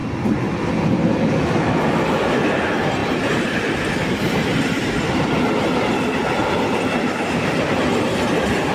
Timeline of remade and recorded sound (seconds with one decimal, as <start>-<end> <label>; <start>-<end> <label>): 0.0-0.7 remade; 0.7-8.7 recorded